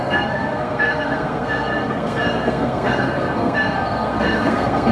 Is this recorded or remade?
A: remade